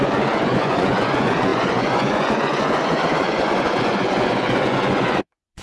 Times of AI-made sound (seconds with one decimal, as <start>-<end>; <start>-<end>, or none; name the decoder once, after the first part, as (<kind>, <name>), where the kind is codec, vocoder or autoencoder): 0.0-5.6 (vocoder, Vocos)